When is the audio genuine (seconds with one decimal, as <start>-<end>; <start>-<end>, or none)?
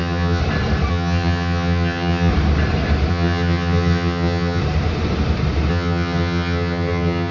0.4-0.9; 2.3-3.1; 4.6-5.7